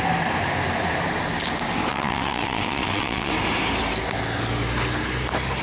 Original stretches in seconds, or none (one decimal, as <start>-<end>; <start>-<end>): 0.0-1.9; 3.3-5.6